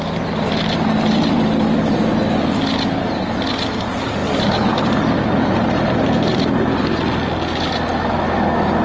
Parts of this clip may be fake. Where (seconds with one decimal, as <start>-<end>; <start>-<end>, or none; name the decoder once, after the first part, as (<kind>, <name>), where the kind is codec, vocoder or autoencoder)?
none

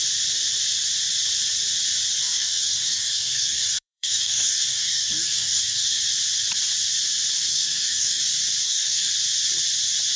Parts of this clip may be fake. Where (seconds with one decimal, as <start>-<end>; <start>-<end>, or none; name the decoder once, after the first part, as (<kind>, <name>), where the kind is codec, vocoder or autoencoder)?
2.2-6.0 (codec, DAC); 7.5-8.2; 8.6-9.1

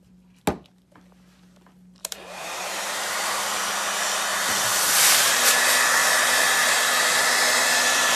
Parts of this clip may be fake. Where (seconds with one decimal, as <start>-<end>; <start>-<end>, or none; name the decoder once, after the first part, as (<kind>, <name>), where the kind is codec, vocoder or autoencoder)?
2.0-3.3 (vocoder, BigVGAN v2); 4.3-5.4

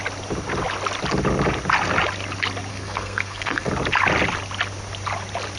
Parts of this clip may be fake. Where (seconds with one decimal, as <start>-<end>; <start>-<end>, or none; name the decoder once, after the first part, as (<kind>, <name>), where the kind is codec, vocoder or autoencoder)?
2.7-3.7 (codec, SNAC)

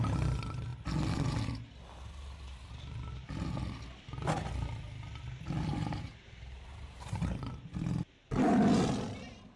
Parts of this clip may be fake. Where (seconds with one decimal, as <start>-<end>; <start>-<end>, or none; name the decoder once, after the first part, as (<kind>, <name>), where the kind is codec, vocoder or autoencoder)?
5.7-7.5 (vocoder, BigVGAN v2)